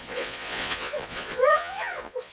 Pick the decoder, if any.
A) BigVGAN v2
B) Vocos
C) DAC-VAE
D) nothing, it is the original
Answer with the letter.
B